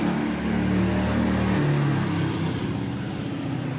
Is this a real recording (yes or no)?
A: yes